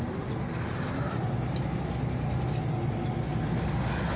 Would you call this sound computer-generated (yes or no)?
no